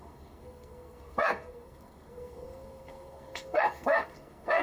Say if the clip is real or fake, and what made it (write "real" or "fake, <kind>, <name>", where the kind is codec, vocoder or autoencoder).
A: fake, codec, SNAC